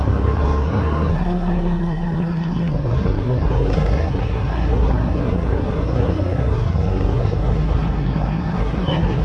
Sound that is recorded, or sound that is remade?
remade